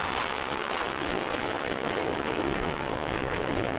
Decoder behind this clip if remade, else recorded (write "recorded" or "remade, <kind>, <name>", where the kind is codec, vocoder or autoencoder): remade, vocoder, WaveNeXt